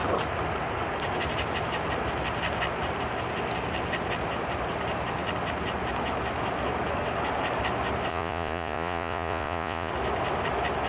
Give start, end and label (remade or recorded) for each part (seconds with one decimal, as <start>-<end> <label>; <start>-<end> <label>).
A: 0.0-8.1 recorded; 8.1-9.9 remade; 9.9-10.9 recorded